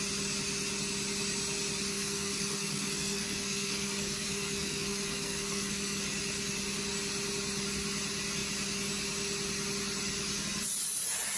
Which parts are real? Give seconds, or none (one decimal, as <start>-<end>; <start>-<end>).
0.0-1.9; 6.0-11.4